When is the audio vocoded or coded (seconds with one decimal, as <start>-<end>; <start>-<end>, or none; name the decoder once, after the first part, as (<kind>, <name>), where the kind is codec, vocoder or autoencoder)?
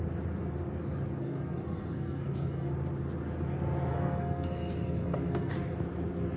1.2-2.7 (codec, SNAC); 3.9-5.5